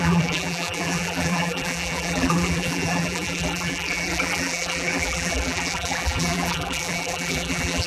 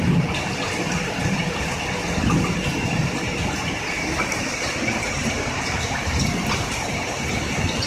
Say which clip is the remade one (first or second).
first